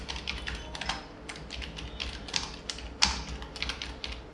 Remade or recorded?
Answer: recorded